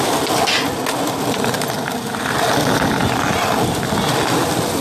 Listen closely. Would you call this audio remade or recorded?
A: recorded